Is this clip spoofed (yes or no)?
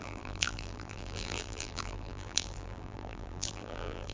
yes